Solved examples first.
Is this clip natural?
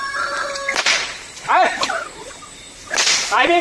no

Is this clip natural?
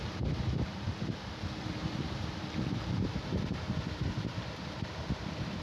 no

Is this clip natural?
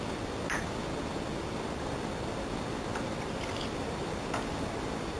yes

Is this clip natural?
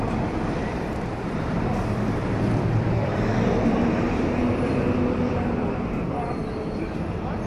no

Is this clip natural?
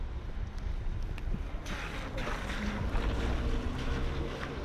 yes